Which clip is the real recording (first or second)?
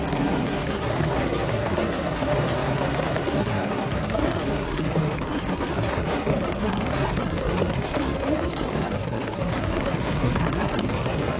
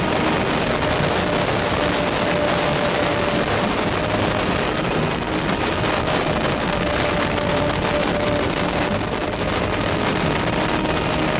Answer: second